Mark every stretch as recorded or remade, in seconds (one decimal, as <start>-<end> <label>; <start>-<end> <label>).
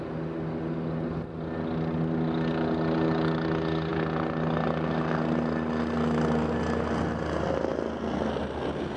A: 0.0-9.0 recorded